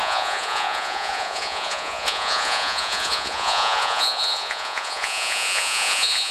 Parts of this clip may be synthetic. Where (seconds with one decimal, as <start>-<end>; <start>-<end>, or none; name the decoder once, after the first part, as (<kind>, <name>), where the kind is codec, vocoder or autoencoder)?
0.0-6.3 (vocoder, Vocos)